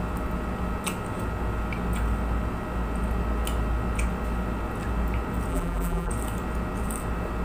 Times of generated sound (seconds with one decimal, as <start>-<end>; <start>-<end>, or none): 5.5-6.1